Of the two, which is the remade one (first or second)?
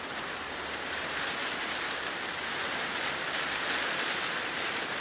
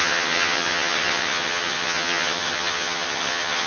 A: second